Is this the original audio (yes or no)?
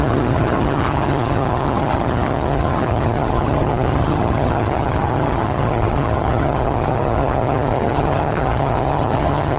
no